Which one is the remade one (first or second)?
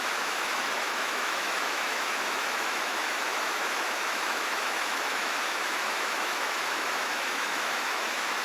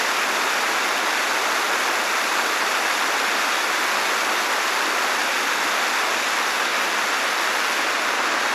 first